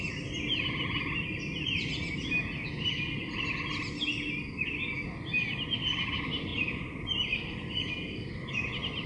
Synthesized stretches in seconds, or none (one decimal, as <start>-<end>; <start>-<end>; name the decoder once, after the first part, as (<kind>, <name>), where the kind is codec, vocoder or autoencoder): none